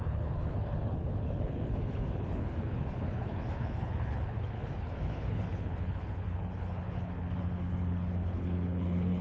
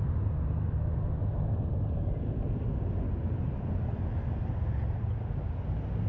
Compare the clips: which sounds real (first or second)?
second